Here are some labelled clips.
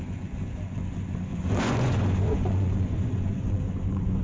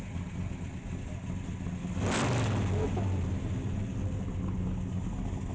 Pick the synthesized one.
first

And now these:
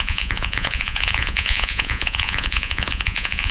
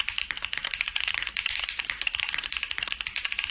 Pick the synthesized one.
first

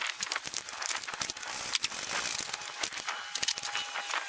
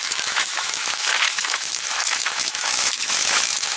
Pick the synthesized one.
second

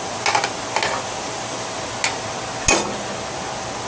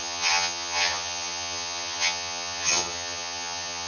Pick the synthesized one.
second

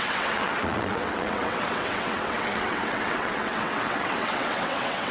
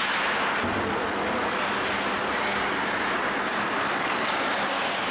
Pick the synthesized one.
first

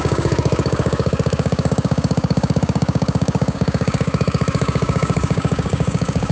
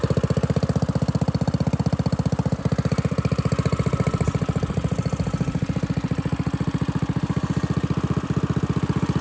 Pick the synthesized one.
first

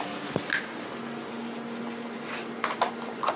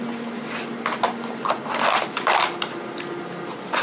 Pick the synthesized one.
second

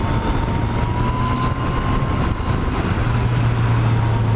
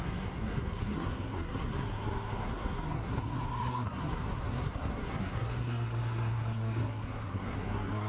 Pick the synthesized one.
second